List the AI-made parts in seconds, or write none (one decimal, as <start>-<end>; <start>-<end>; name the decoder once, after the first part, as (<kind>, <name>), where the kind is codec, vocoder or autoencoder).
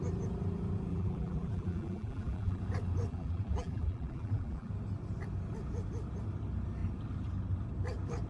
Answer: 0.9-2.6 (vocoder, BigVGAN v2); 3.1-4.7